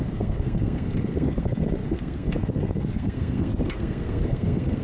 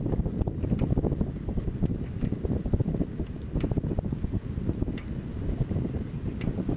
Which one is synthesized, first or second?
first